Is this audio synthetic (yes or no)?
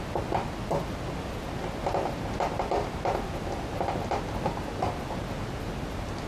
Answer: no